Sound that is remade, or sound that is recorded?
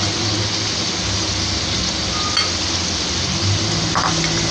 recorded